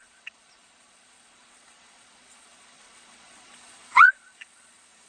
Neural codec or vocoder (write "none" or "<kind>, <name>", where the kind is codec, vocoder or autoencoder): vocoder, Vocos